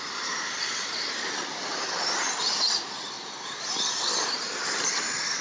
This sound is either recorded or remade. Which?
recorded